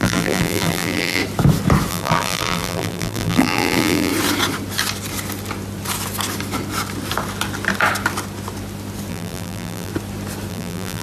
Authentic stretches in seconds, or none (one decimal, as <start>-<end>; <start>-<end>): 1.2-1.9; 4.1-9.1; 9.9-10.5